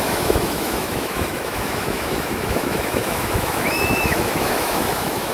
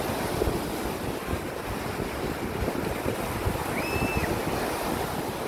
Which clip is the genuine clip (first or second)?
second